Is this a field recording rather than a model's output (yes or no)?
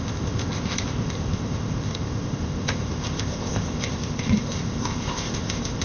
no